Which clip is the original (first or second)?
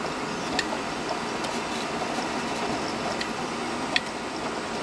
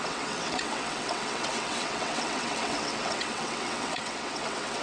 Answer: first